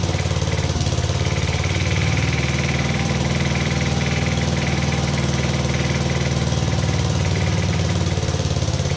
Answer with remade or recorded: remade